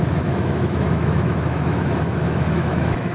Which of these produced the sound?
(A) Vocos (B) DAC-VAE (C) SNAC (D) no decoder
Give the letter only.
B